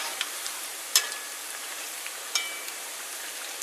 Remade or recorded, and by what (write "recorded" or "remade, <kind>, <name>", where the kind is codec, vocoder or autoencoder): remade, vocoder, BigVGAN v2